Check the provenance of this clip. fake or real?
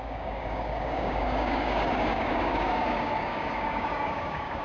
fake